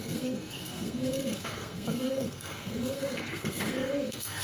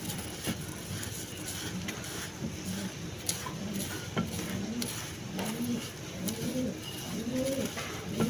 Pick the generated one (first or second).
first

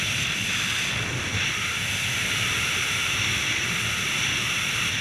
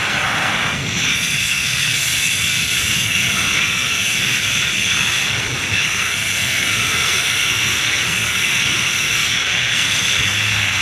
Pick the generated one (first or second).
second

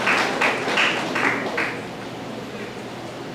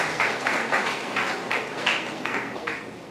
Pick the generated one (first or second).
second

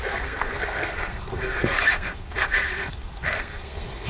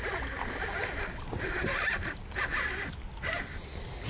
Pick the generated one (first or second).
first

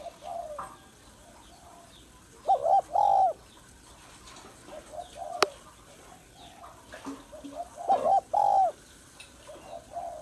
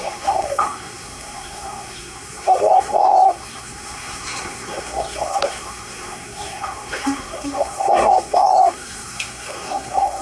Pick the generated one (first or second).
second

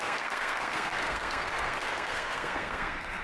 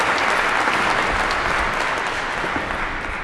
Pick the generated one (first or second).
first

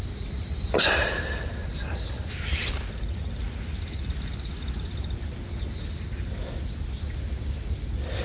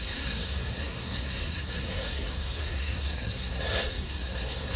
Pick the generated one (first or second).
second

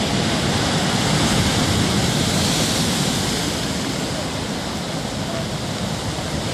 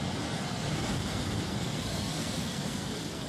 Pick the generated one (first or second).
second